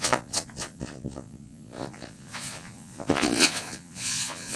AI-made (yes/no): yes